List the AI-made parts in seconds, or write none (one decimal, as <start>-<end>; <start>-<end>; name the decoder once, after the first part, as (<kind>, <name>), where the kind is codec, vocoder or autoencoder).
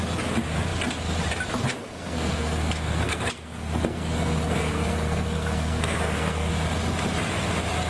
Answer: 1.8-6.5 (codec, SNAC)